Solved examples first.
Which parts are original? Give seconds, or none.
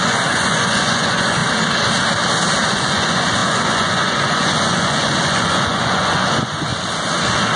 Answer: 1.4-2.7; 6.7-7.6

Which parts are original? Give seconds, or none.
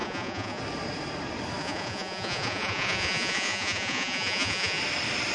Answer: 0.6-1.6; 4.8-5.3